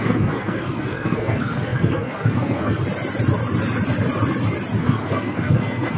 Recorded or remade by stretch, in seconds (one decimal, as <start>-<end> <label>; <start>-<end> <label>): 0.0-2.8 remade; 2.8-4.8 recorded; 4.8-6.0 remade